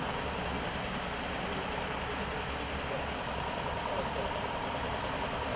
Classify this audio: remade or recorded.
recorded